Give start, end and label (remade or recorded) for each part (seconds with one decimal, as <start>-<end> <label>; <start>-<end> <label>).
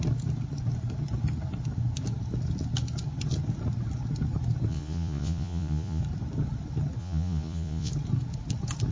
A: 0.0-4.7 recorded; 4.7-6.0 remade; 6.0-7.0 recorded; 7.0-7.9 remade; 7.9-8.9 recorded